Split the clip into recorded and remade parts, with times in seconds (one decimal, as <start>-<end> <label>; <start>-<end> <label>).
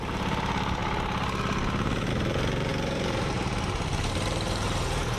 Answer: 0.0-0.8 remade; 0.8-2.1 recorded; 2.1-5.2 remade